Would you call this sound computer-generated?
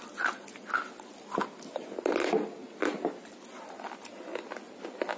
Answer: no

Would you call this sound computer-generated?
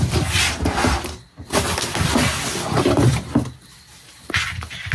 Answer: no